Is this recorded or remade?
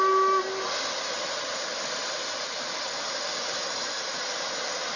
recorded